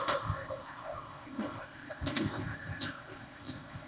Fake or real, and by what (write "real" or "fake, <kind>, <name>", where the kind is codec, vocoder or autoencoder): fake, codec, ZipCodec